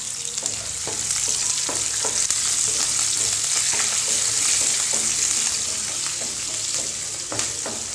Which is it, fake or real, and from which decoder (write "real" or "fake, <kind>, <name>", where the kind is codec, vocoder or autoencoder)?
real